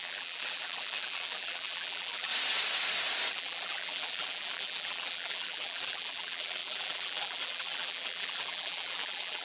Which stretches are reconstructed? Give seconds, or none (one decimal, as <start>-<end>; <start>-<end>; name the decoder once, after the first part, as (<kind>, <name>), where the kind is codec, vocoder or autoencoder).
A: 0.0-2.3 (vocoder, BigVGAN v2); 3.3-9.4